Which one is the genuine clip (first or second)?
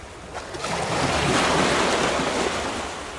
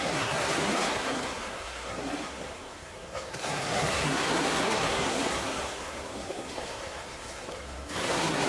first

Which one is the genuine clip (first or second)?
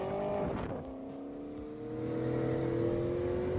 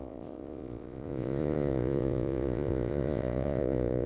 first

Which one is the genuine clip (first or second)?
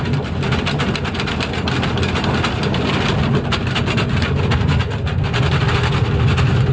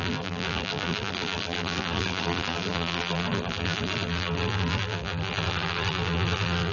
first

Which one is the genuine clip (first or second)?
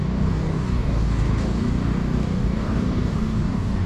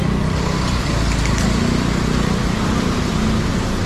second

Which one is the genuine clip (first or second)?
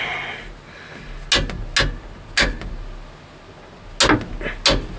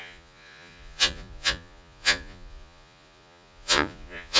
first